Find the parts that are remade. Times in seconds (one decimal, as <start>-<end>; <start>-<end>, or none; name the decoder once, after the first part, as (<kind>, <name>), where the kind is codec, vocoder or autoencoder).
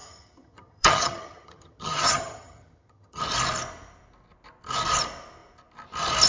0.0-3.2 (vocoder, HiFi-GAN)